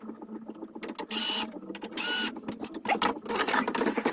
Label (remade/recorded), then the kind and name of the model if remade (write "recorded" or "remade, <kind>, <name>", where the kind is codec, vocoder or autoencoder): recorded